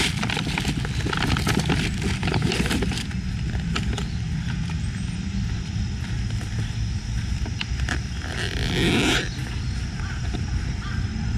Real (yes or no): yes